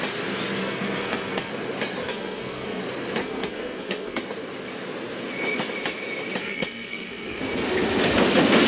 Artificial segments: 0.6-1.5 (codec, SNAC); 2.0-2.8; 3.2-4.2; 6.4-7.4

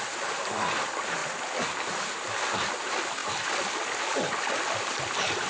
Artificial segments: none

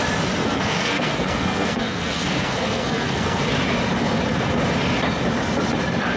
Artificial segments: 0.4-3.4 (codec, SNAC)

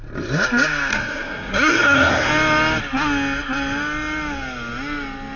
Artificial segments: 0.9-2.3 (codec, SNAC)

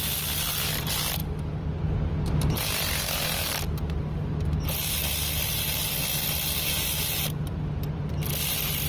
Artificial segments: none

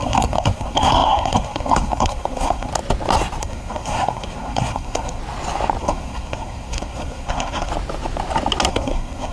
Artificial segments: 0.0-2.7 (codec, SNAC); 3.4-5.2; 5.8-7.7; 8.7-9.3